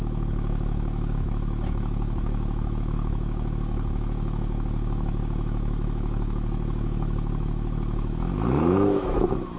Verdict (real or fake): fake